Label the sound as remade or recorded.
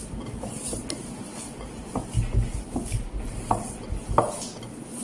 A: recorded